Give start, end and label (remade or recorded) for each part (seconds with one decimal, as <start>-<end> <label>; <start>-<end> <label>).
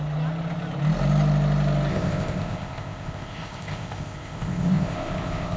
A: 0.0-1.9 recorded; 1.9-5.6 remade